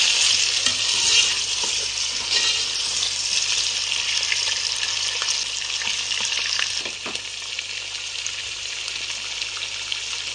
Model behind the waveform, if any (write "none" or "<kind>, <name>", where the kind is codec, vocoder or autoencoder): none